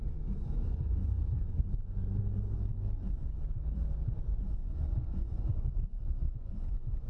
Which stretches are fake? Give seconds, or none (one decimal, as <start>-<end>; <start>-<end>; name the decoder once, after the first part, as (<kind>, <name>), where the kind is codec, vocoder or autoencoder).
0.0-1.6 (vocoder, Vocos); 4.6-7.1

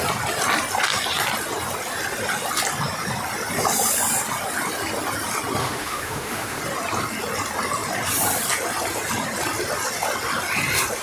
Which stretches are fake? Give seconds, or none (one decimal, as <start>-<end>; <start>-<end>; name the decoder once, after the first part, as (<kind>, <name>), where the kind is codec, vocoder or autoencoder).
5.6-6.6 (autoencoder, DAC-VAE)